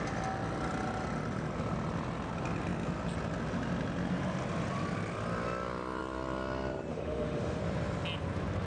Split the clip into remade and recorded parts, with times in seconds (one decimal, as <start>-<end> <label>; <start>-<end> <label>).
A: 0.0-6.9 recorded; 6.9-7.6 remade; 7.6-8.7 recorded